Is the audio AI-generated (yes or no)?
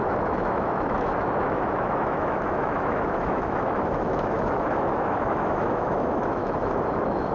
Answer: yes